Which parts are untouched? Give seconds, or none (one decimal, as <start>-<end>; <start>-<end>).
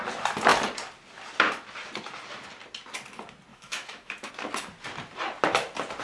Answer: 0.0-3.5; 4.3-6.0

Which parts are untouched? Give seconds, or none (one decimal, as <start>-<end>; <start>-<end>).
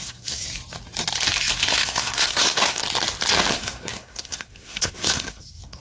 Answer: 0.5-1.7; 2.8-3.5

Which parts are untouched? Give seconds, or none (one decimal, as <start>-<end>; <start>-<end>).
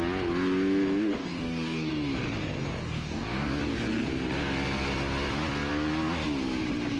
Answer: 0.0-1.2; 1.9-2.6; 3.6-7.0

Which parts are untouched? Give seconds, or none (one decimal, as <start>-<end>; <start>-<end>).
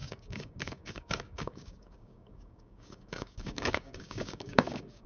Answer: none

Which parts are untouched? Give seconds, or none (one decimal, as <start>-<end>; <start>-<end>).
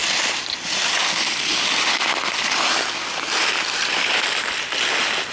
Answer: 0.0-5.3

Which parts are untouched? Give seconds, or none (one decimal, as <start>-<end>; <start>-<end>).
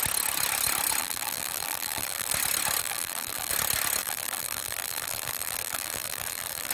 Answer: 0.0-1.0; 2.3-2.8; 3.5-4.0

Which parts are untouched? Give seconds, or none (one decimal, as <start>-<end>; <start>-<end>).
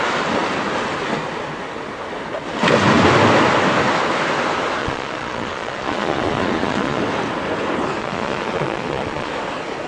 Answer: 0.0-4.8; 7.0-8.0; 9.3-9.9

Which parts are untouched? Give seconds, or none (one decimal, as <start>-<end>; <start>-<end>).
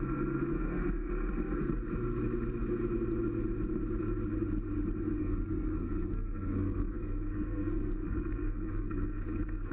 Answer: 0.0-0.5; 1.1-5.2